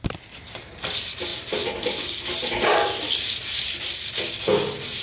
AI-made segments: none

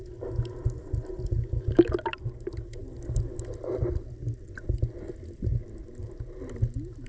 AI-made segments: none

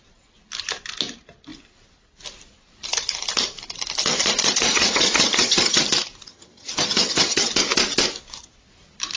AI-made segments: 4.7-5.8; 6.3-7.5

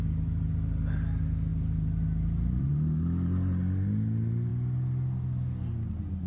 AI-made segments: none

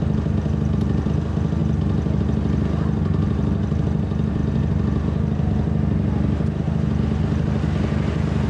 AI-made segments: none

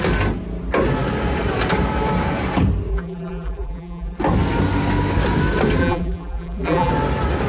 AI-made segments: 2.9-4.2; 5.8-6.9

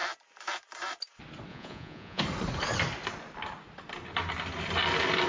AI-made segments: 1.5-2.2